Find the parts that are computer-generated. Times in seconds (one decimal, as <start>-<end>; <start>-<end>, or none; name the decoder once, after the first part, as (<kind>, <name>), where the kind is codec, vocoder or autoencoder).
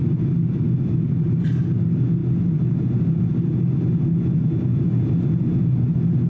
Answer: none